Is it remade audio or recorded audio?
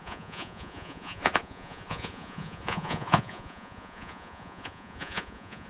remade